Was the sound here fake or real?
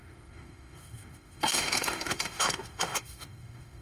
fake